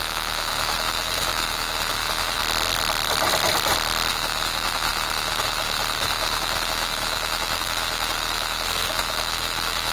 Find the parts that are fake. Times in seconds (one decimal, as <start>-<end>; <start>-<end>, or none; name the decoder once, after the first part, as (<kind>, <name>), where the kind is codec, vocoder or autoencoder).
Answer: 0.0-2.4 (autoencoder, DAC-VAE); 4.1-9.9